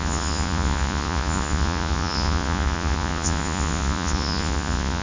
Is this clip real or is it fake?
fake